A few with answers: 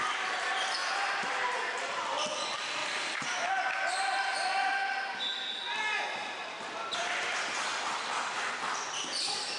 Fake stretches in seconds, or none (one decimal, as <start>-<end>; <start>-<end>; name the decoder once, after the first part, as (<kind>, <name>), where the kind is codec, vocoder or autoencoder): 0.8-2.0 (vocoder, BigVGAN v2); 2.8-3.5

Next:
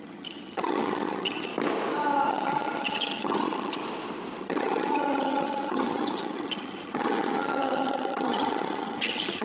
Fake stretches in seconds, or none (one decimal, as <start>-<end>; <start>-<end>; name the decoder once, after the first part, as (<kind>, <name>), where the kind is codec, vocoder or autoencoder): 0.0-1.5 (vocoder, HiFi-GAN); 2.3-3.8; 4.4-9.4

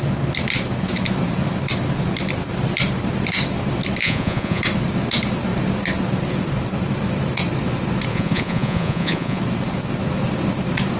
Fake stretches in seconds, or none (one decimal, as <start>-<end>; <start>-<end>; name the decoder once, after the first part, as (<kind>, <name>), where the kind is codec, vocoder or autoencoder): 4.0-4.6 (vocoder, Vocos); 8.1-9.4